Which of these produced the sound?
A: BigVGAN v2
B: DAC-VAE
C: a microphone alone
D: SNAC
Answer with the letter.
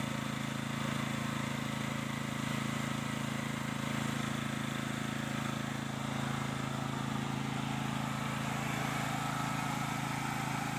C